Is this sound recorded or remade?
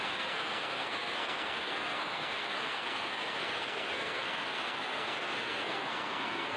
remade